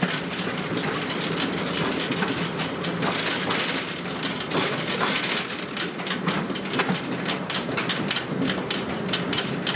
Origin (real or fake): real